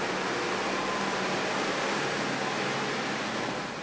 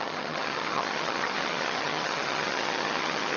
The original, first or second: first